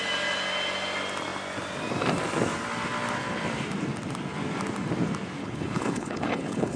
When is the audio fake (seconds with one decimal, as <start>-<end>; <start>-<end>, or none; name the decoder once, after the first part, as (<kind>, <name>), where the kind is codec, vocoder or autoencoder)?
5.4-6.8 (codec, HILCodec)